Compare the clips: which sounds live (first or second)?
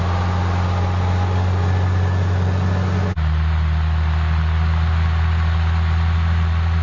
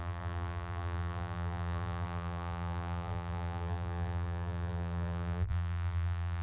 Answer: first